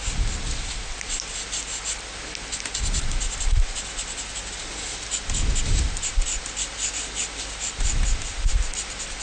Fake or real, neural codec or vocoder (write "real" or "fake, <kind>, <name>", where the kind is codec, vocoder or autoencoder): real